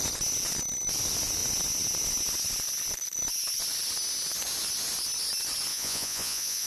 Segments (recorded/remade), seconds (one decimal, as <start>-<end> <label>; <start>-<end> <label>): 0.0-5.7 recorded; 5.7-6.7 remade